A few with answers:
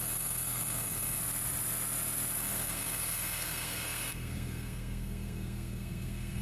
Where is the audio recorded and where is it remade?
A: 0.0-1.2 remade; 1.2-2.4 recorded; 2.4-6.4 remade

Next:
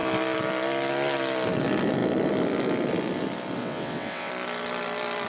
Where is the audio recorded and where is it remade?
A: 0.0-3.6 recorded; 3.6-4.3 remade; 4.3-5.3 recorded